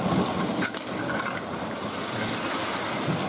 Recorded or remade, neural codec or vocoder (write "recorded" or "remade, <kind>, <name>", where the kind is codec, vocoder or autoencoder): recorded